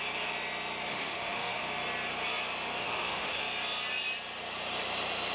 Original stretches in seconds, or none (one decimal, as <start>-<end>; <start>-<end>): 0.0-0.9; 1.6-2.8; 3.4-5.3